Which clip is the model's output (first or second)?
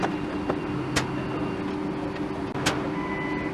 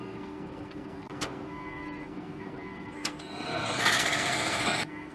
second